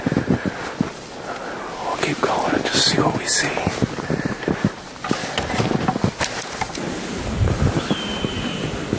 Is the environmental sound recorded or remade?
recorded